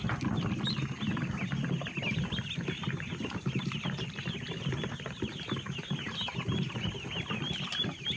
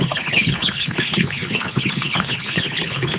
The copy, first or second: second